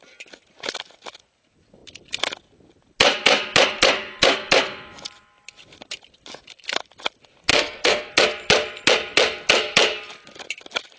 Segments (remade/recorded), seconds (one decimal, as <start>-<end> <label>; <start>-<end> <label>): 0.0-7.5 recorded; 7.5-8.1 remade; 8.1-11.0 recorded